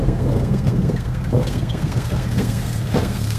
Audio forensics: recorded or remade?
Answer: remade